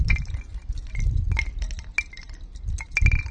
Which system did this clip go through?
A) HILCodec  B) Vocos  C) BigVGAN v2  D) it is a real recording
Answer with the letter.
D